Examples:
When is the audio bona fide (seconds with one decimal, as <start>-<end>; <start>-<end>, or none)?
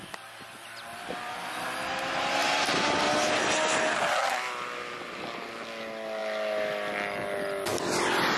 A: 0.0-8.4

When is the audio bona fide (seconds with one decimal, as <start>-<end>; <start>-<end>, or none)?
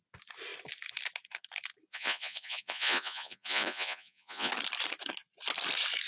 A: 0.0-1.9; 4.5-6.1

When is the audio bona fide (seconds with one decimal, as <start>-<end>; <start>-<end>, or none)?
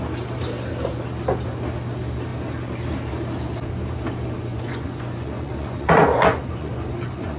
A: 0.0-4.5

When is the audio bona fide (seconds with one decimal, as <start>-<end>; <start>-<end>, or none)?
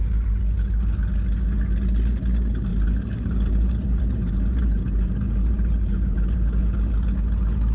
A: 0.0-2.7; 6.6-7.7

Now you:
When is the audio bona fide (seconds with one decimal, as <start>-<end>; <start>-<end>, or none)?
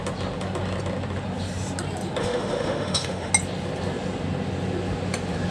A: 0.0-2.2; 3.3-5.5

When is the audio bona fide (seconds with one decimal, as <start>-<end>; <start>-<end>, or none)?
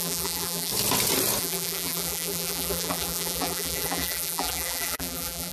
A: 0.7-1.4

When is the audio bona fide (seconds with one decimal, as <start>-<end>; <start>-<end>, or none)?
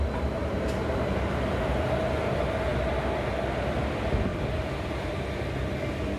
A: 0.0-4.3; 4.9-6.2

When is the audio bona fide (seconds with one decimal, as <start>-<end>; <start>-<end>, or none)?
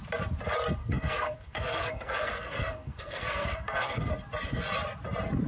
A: 0.0-0.8; 4.1-5.5